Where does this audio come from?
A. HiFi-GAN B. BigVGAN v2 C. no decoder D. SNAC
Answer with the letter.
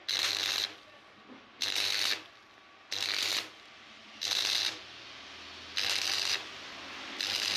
C